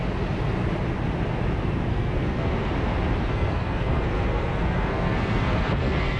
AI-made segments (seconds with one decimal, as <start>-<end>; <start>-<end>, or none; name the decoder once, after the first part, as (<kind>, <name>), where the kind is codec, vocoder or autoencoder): 1.9-2.6 (codec, SNAC); 3.3-6.2